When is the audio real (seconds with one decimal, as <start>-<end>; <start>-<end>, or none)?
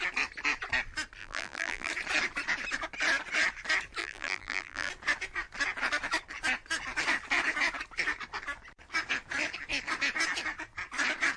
0.0-1.2; 1.9-4.0; 4.9-11.4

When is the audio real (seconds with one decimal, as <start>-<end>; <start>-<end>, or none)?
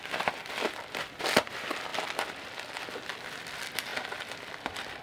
none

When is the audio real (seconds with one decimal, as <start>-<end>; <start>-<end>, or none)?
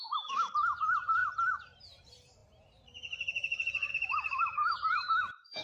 1.2-1.8